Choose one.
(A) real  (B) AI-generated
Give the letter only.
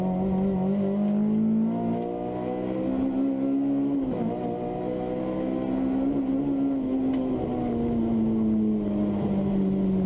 A